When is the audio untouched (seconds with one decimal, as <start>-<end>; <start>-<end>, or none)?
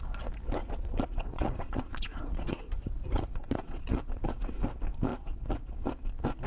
0.0-0.6; 4.5-5.1; 5.7-6.5